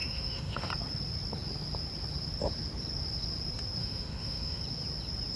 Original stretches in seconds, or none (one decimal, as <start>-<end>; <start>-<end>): 0.7-3.8; 4.6-5.4